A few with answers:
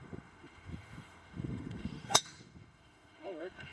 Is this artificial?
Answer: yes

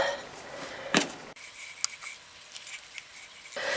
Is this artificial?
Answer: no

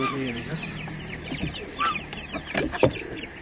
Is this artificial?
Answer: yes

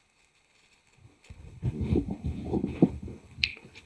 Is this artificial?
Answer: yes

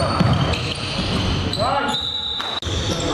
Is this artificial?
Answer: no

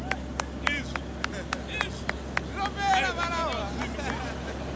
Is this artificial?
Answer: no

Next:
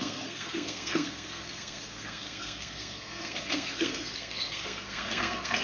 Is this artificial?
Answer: yes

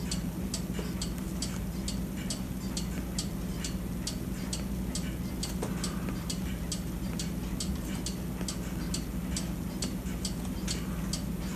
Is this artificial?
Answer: no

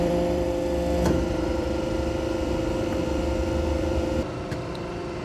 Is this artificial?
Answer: yes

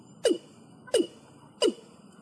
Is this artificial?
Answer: no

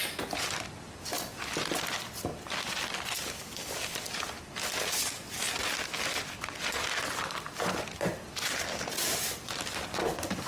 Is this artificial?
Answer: no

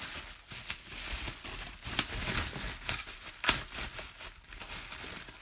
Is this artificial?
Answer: no